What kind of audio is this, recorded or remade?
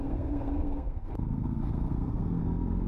remade